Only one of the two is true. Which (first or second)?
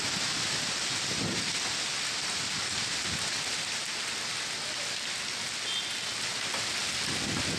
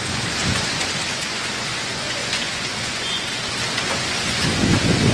first